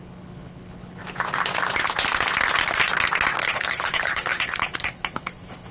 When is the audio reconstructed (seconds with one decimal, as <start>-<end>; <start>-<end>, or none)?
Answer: 0.0-1.0; 3.4-5.7